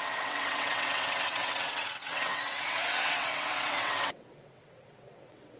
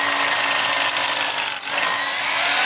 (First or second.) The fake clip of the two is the first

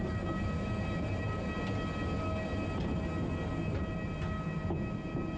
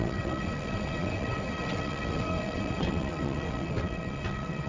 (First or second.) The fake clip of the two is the second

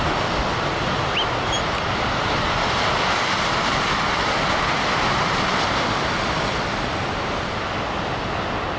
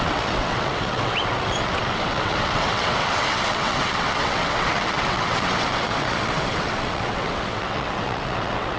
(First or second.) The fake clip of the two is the second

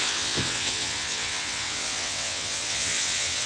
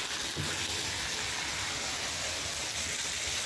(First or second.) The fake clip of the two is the first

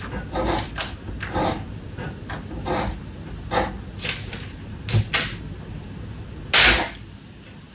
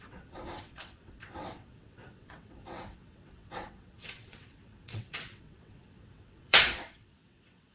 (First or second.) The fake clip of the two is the second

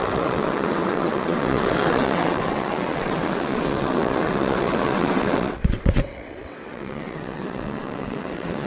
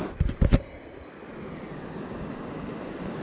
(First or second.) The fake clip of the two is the first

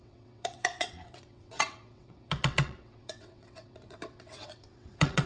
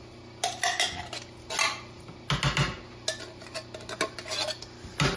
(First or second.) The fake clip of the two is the first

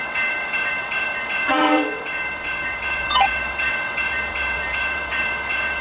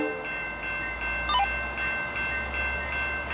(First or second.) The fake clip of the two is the first